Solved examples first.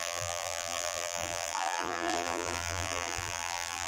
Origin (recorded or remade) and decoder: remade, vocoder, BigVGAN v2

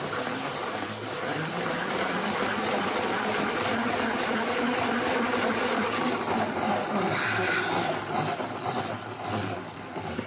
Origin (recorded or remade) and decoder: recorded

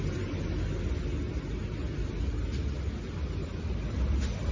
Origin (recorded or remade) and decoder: recorded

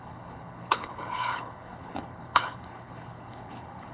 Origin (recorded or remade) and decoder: remade, codec, HILCodec